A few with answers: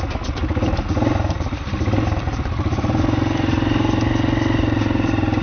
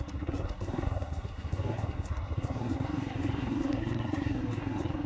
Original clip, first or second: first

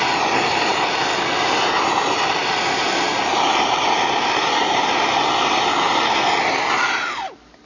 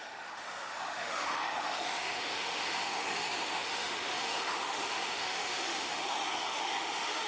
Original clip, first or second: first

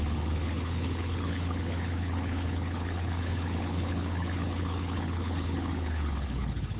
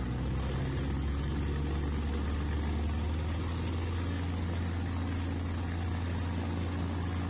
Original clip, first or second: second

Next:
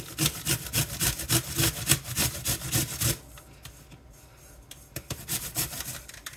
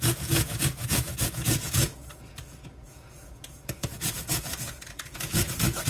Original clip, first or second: first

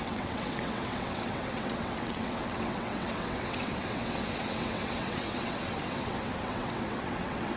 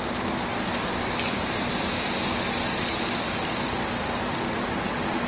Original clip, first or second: second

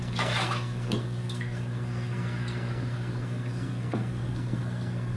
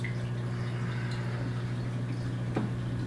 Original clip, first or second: second